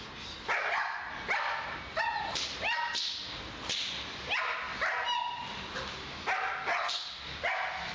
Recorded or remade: recorded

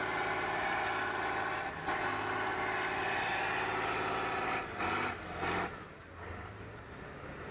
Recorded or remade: recorded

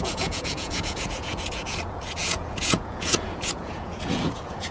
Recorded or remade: remade